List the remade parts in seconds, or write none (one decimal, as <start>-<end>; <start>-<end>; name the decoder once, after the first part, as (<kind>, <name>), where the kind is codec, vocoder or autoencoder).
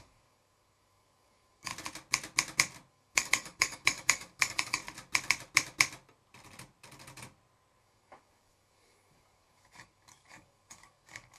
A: 0.0-1.7 (codec, DAC); 2.9-4.8; 7.8-11.4